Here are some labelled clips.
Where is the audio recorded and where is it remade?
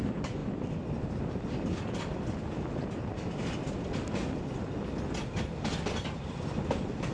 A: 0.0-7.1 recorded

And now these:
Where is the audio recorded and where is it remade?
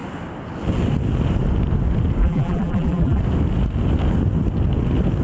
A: 0.0-2.2 recorded; 2.2-3.2 remade; 3.2-5.2 recorded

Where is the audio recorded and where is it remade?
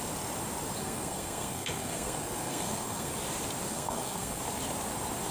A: 0.0-0.8 recorded; 0.8-3.1 remade; 3.1-3.7 recorded; 3.7-4.4 remade; 4.4-5.3 recorded